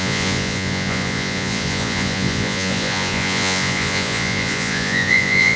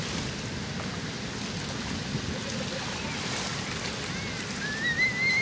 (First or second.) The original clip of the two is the second